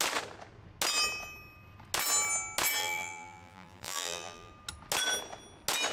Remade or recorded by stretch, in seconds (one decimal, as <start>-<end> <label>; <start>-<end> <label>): 0.0-2.8 recorded; 2.8-4.5 remade; 4.5-5.9 recorded